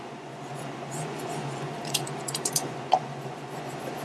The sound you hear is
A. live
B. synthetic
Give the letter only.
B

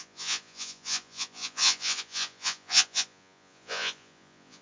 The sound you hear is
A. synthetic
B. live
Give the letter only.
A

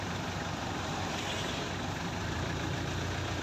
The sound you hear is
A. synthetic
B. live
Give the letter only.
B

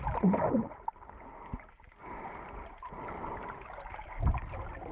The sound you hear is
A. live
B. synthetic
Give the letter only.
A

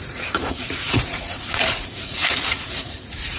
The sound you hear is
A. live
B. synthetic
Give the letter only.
B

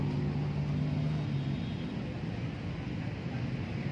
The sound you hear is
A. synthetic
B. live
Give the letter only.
B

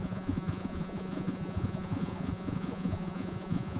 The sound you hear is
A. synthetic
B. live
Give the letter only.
A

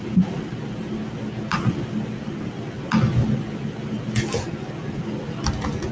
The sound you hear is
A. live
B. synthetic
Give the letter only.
A